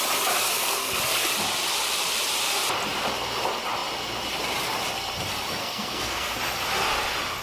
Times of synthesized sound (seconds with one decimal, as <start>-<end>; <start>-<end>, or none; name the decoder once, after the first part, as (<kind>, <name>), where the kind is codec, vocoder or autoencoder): 0.4-1.0 (codec, SNAC); 5.6-6.4